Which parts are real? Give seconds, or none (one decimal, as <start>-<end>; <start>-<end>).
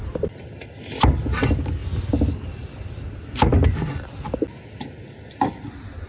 0.0-6.1